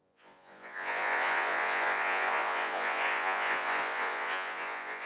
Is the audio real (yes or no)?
no